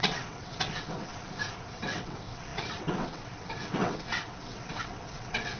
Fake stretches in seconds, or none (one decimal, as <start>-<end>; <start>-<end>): 0.0-1.1; 1.7-5.6